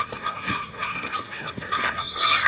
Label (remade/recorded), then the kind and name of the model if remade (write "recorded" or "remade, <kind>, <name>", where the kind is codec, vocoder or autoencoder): remade, codec, SNAC